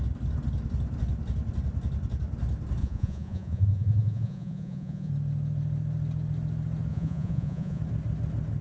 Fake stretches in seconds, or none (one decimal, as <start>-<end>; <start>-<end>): 2.8-5.1; 6.9-7.8